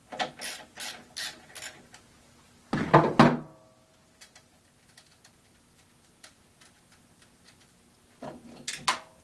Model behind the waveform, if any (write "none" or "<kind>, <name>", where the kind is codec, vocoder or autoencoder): none